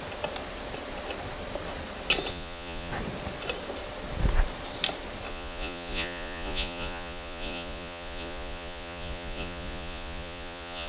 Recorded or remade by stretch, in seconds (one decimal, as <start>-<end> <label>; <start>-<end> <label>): 0.0-2.3 recorded; 2.3-2.9 remade; 2.9-5.3 recorded; 5.3-10.9 remade